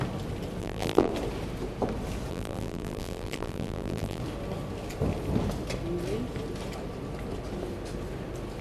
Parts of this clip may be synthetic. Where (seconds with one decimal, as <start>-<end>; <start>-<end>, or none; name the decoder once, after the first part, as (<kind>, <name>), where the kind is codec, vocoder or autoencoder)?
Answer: 0.6-1.1 (vocoder, BigVGAN v2); 2.3-4.2